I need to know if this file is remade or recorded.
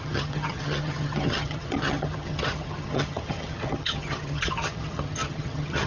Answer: remade